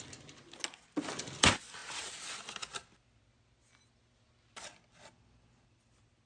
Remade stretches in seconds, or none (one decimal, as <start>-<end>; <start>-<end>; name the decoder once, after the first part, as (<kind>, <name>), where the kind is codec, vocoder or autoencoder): none